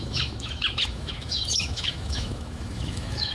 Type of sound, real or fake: fake